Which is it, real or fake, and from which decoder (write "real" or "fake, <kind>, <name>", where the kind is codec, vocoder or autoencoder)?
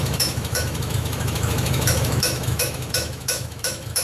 fake, autoencoder, DAC-VAE